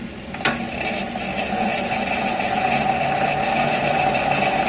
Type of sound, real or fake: real